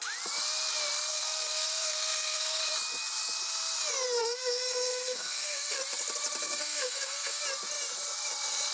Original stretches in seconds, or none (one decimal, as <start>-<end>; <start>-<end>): 0.0-1.1; 2.6-4.2; 5.8-6.4; 7.4-8.7